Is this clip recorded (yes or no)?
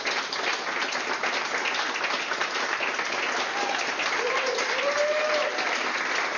yes